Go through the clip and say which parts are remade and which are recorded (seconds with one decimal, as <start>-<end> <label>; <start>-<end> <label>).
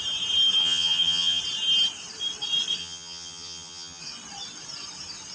0.0-0.6 recorded; 0.6-1.4 remade; 1.4-2.8 recorded; 2.8-4.0 remade; 4.0-5.3 recorded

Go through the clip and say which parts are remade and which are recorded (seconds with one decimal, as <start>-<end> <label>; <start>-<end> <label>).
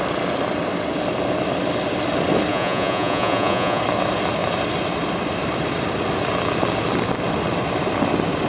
0.0-2.5 recorded; 2.5-3.8 remade; 3.8-8.5 recorded